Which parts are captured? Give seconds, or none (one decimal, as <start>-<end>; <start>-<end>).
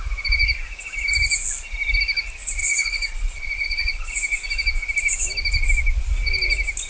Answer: 0.0-2.6; 4.1-6.9